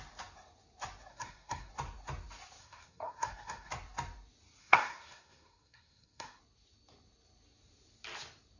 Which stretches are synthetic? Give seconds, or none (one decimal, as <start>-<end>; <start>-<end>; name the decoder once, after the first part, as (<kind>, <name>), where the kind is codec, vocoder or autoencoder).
1.1-1.7 (codec, SNAC); 2.6-3.7; 4.6-6.4